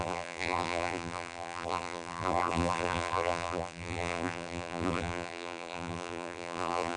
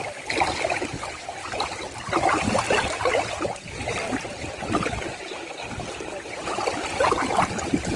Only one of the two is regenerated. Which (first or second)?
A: first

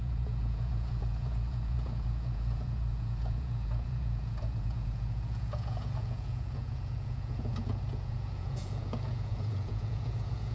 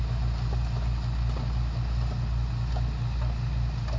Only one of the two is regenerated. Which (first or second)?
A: first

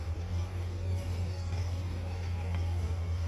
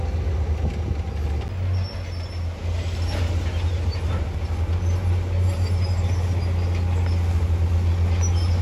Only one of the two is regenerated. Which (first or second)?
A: first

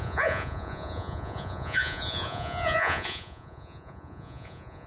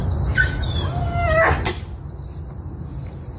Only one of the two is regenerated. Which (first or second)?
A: first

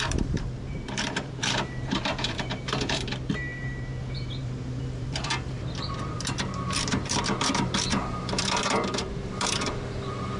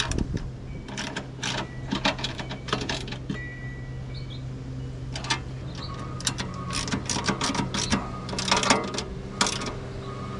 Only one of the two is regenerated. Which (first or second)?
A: first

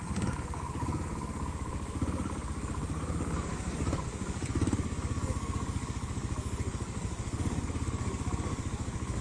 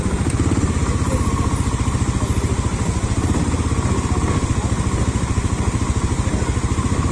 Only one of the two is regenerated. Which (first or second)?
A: first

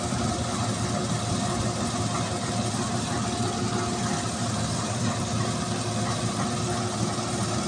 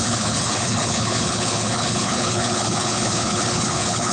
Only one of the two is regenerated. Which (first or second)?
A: second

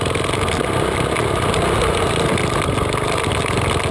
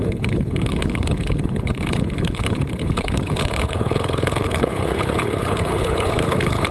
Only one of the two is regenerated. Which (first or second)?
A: second